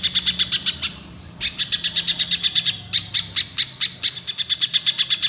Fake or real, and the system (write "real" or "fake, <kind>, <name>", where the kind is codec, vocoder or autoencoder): real